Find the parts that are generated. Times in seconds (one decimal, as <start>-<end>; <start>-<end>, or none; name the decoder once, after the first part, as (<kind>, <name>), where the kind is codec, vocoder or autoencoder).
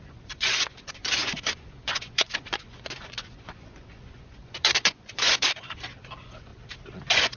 0.0-6.5 (vocoder, Vocos); 7.0-7.4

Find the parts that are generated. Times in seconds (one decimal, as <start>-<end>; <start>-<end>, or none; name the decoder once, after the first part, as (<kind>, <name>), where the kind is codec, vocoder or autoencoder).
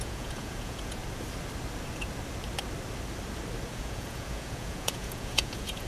0.0-1.0 (vocoder, Vocos); 3.7-5.9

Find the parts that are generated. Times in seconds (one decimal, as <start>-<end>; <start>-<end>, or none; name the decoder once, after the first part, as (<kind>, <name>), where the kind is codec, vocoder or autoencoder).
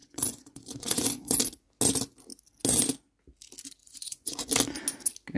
0.0-1.4 (vocoder, Vocos); 3.8-4.5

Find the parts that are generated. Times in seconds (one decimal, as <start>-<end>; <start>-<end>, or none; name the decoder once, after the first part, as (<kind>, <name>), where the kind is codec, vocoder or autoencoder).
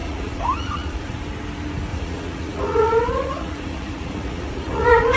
0.0-1.2 (vocoder, Vocos); 1.9-5.2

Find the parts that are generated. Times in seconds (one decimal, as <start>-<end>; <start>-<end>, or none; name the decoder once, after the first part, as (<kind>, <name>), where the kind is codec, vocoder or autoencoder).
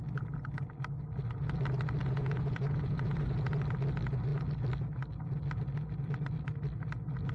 2.0-3.5 (vocoder, Vocos)